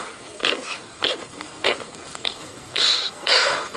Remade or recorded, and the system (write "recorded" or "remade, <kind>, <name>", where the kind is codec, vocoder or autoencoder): remade, codec, SNAC